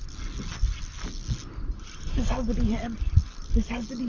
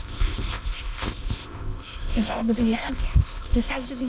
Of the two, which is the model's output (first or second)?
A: second